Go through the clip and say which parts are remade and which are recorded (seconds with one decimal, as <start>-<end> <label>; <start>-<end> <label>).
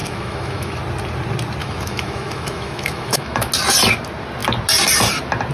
0.0-0.8 remade; 0.8-1.6 recorded; 1.6-3.5 remade; 3.5-5.5 recorded